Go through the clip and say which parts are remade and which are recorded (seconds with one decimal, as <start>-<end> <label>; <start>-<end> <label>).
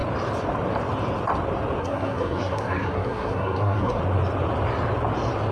0.0-1.8 recorded; 1.8-4.0 remade; 4.0-5.5 recorded